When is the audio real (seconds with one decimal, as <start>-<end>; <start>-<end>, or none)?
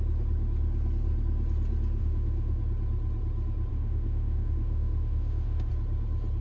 0.0-2.0; 2.6-3.7; 5.7-6.4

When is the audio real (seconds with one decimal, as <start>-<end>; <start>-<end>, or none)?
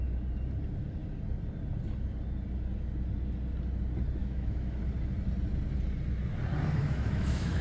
0.0-4.2; 4.8-6.8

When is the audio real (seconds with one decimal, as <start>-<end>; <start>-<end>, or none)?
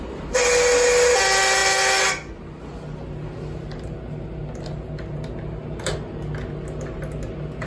0.0-7.7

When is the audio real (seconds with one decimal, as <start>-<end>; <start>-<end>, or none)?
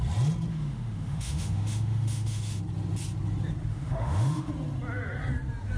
0.0-0.5; 2.6-3.7; 4.5-5.8